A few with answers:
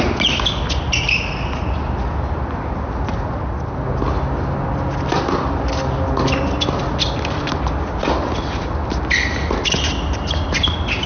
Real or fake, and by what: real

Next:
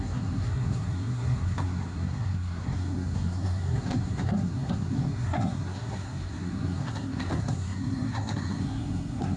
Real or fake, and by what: fake, codec, SNAC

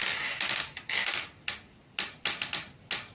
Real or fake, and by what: real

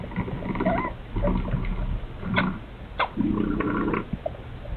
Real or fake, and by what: real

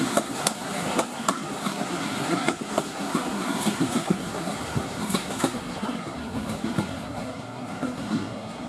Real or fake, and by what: fake, codec, SNAC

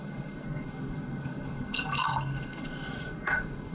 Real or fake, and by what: fake, codec, SNAC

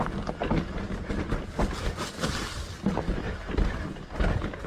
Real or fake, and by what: real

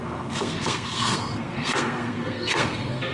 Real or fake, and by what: fake, codec, SNAC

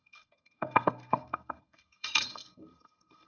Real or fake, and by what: fake, codec, SNAC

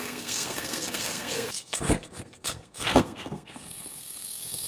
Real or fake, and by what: fake, codec, SNAC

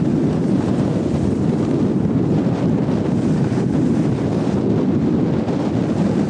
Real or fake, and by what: real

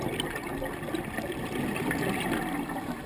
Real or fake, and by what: real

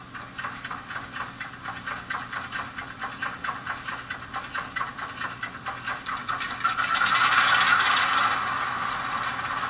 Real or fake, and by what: real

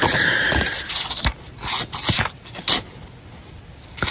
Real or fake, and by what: real